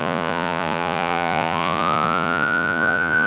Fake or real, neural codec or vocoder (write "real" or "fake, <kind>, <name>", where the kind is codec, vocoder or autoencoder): fake, vocoder, Vocos